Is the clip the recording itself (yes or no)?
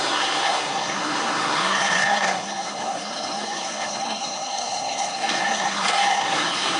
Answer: no